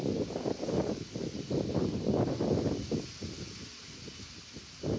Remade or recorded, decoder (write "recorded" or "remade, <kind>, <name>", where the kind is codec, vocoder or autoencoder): recorded